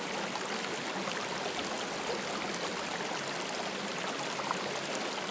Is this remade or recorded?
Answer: recorded